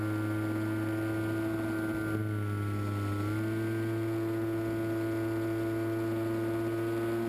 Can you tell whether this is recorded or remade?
recorded